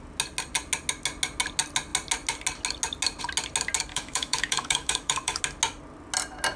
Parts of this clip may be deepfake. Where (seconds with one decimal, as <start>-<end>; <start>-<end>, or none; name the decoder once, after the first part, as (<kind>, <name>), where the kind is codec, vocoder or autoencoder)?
3.9-5.4 (autoencoder, DAC-VAE)